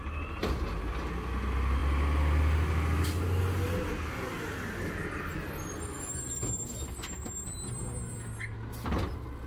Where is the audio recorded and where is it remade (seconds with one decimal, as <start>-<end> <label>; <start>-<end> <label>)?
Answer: 0.0-9.5 recorded